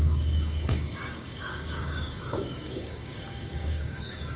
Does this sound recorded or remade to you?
remade